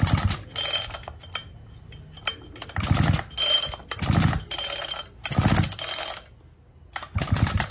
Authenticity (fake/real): real